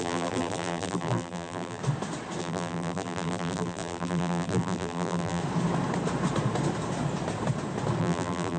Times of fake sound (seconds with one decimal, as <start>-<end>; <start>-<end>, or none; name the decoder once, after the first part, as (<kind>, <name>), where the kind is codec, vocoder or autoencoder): 0.0-1.8 (vocoder, BigVGAN v2); 2.4-5.4; 8.0-8.6